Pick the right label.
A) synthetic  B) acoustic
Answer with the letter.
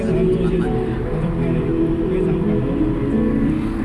B